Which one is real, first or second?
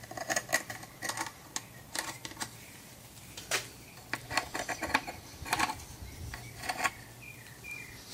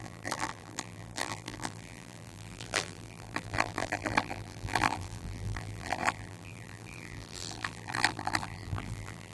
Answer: first